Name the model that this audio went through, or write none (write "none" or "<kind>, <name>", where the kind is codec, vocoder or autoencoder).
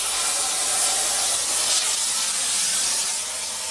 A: none